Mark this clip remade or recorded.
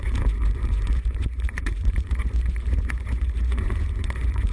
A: remade